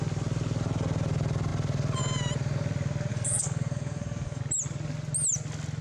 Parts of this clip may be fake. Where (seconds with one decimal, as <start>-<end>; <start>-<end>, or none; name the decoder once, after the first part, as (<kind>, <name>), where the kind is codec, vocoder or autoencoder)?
3.1-4.4 (codec, SNAC)